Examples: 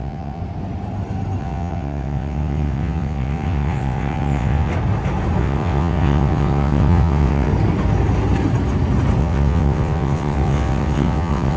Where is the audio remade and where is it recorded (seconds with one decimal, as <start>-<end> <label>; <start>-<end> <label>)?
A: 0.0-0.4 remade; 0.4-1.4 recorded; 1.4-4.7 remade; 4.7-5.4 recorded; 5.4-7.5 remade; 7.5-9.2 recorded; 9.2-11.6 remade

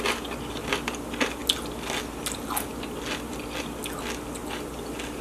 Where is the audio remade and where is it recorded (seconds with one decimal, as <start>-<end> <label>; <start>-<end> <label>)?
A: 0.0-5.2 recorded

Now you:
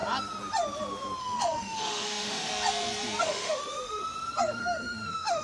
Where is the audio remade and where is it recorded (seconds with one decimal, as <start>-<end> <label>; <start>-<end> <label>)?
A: 0.0-1.2 recorded; 1.2-2.5 remade; 2.5-3.2 recorded; 3.2-4.0 remade; 4.0-4.6 recorded; 4.6-5.4 remade

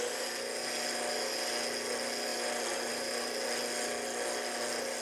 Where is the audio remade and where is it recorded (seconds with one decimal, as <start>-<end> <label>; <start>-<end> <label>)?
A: 0.0-5.0 recorded

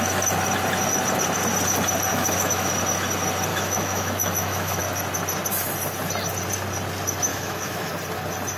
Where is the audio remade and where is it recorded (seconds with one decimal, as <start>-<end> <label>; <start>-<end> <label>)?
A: 0.0-2.1 recorded; 2.1-2.7 remade; 2.7-3.5 recorded; 3.5-4.8 remade; 4.8-7.3 recorded; 7.3-7.9 remade; 7.9-8.6 recorded